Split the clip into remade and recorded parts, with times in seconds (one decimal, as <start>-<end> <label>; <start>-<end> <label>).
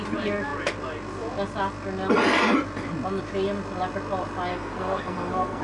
0.0-4.5 recorded; 4.5-5.6 remade